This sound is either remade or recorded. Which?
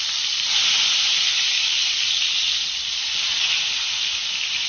recorded